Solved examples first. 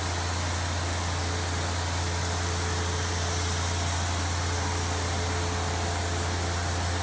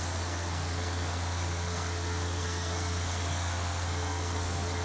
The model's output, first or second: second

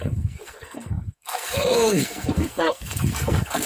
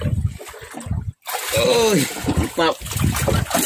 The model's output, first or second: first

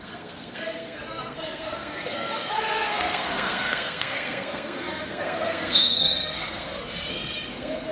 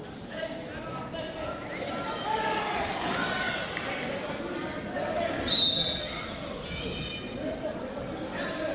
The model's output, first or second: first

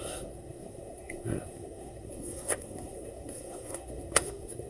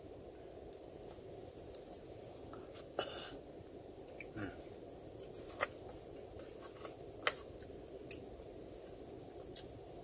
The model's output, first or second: first